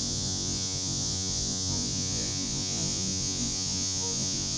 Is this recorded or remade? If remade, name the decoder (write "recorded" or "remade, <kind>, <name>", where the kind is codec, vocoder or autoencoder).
remade, vocoder, Vocos